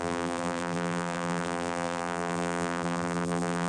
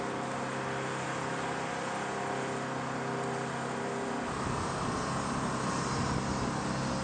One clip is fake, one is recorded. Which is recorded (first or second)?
second